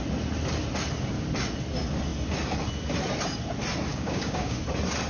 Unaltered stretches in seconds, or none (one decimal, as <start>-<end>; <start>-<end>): 0.0-3.9; 4.6-5.1